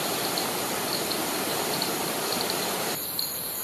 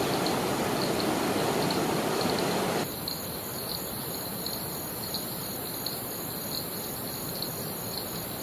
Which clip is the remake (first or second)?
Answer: first